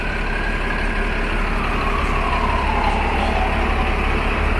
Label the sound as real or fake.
real